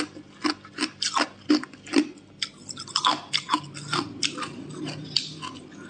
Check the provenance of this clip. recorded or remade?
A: recorded